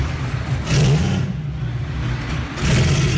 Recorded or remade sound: recorded